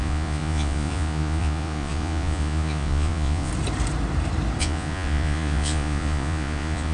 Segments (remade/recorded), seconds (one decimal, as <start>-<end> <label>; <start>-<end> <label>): 0.0-3.5 remade; 3.5-4.6 recorded; 4.6-6.9 remade